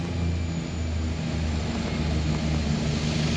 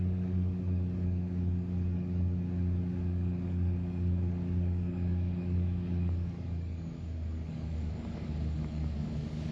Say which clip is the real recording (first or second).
first